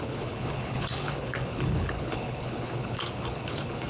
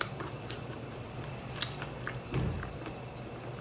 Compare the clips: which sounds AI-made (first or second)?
first